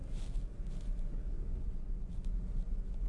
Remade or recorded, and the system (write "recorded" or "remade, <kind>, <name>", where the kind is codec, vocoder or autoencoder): recorded